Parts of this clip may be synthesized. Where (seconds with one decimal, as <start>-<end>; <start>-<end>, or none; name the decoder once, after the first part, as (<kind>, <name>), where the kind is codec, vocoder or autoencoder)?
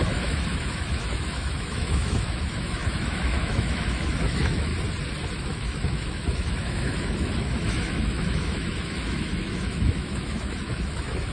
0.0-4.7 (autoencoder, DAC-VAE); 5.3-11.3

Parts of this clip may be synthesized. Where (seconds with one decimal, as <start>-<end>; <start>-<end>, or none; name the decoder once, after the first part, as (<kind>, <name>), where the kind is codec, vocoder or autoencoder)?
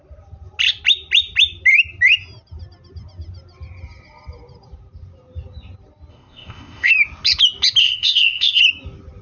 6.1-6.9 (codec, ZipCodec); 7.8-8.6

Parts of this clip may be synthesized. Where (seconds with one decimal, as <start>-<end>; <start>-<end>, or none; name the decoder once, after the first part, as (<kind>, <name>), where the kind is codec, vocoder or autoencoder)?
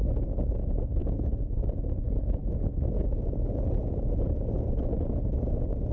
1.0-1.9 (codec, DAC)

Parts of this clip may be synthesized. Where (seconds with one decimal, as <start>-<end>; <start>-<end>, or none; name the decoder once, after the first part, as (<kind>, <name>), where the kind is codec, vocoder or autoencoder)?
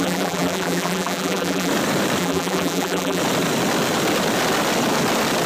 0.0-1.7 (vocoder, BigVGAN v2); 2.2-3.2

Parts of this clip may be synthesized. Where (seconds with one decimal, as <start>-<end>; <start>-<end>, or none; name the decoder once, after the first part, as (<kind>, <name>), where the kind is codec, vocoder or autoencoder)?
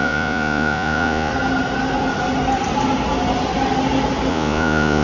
0.0-1.3 (vocoder, Vocos); 4.3-5.0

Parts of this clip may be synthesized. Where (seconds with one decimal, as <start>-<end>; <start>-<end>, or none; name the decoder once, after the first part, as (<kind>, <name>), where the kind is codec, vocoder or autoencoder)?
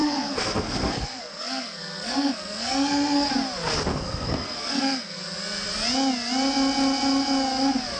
0.0-3.3 (codec, SNAC); 3.9-5.2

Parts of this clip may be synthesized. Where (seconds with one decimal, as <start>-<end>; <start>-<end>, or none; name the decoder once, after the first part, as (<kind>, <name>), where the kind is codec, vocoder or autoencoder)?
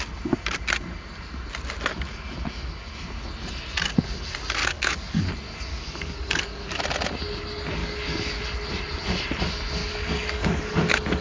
4.6-5.2 (codec, DAC); 5.7-6.7; 7.8-8.4; 9.8-11.2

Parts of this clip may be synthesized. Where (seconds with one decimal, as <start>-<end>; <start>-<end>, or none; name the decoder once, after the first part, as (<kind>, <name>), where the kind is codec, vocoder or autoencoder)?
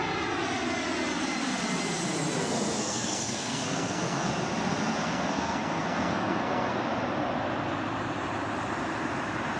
2.4-4.3 (codec, SNAC); 5.0-6.8